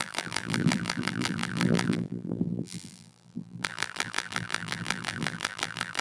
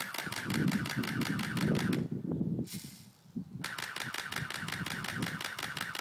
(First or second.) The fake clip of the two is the first